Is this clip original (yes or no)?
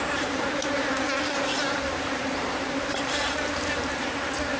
no